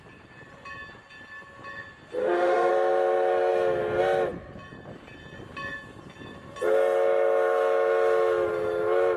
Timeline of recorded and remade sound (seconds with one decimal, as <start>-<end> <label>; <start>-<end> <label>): 0.0-2.2 recorded; 2.2-2.7 remade; 2.7-9.2 recorded